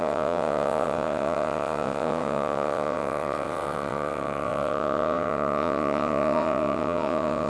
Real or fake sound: fake